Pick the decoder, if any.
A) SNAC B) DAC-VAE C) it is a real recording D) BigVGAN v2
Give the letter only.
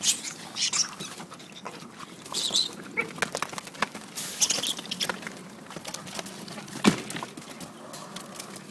C